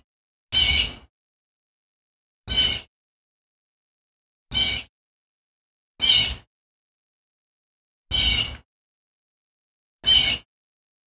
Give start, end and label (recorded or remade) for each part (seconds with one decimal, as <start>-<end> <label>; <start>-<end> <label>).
0.0-11.1 recorded